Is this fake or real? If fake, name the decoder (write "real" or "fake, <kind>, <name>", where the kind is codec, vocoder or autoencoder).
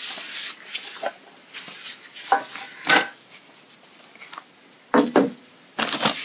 real